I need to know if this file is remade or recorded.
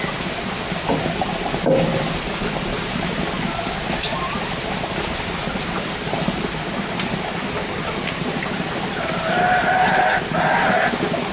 recorded